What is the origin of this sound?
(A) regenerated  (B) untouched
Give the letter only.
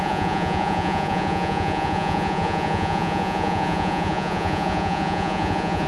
A